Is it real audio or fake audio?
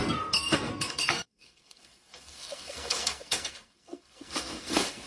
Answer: fake